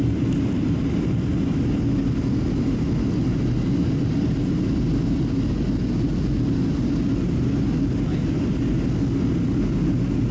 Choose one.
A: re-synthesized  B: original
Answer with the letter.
B